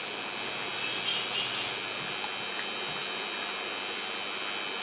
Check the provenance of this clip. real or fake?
real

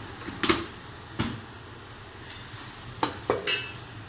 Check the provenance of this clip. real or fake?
real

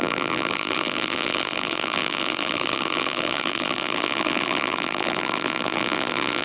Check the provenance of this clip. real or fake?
fake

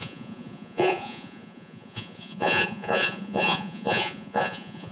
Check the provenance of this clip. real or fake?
fake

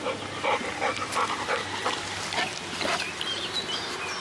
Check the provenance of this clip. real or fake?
real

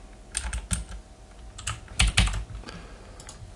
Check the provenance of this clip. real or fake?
real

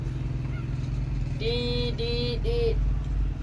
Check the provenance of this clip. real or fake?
real